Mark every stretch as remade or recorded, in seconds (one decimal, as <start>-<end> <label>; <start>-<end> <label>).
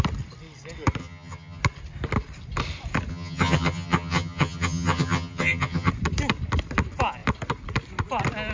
0.0-1.0 recorded; 1.0-1.6 remade; 1.6-3.1 recorded; 3.1-5.9 remade; 5.9-8.5 recorded